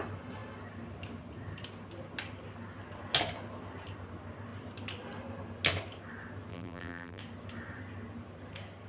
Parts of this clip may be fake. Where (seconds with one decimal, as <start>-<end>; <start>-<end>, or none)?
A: 6.5-7.2